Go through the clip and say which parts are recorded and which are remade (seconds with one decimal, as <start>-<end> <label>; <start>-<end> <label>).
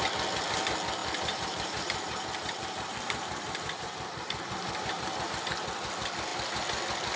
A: 0.0-1.0 recorded; 1.0-5.3 remade; 5.3-7.2 recorded